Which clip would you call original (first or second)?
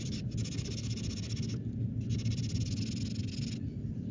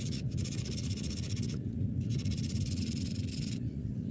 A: first